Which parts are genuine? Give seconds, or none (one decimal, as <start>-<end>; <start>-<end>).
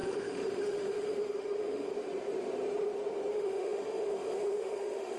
1.9-3.3